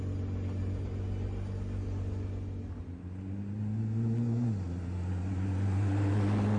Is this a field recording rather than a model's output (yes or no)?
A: yes